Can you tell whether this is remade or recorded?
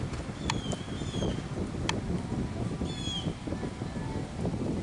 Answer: recorded